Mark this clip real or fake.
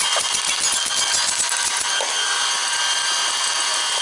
real